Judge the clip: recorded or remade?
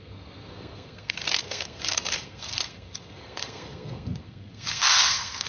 remade